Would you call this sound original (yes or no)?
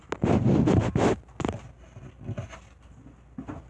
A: yes